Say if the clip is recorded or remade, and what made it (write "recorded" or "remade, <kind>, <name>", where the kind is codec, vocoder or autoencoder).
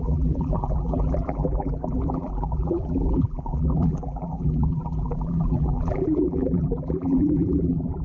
remade, vocoder, BigVGAN v2